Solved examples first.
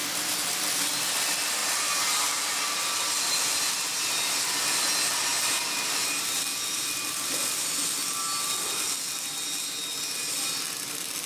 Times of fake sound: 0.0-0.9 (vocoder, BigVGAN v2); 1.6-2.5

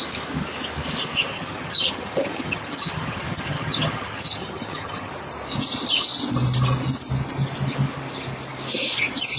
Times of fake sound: 1.3-5.1 (vocoder, HiFi-GAN)

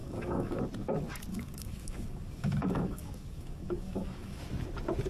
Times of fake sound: 0.0-0.6 (codec, DAC); 1.3-4.4

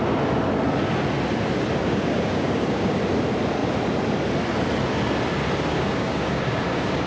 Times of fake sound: 1.8-3.0 (codec, DAC); 5.7-7.1

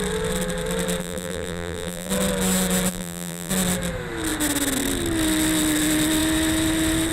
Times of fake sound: 1.0-2.1 (vocoder, BigVGAN v2); 2.9-3.5